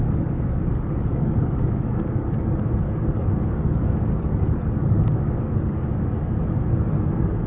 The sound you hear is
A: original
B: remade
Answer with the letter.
B